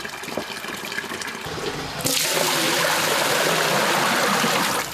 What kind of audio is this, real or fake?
real